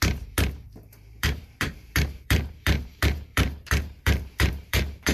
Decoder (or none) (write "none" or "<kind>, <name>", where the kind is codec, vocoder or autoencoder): vocoder, BigVGAN v2